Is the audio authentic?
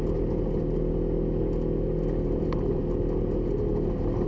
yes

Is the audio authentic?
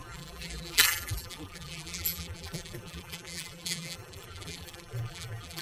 no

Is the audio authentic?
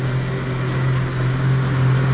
yes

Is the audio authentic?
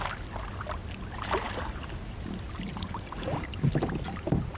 yes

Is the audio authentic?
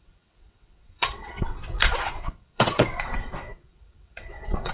no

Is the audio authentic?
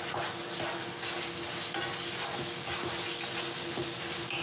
yes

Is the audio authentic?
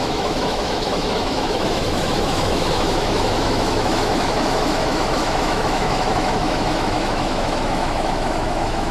no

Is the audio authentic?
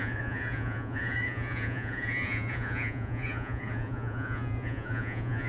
no